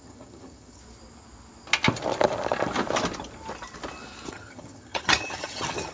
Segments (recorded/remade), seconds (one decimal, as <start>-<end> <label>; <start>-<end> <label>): 0.0-0.8 remade; 0.8-4.3 recorded; 4.3-5.9 remade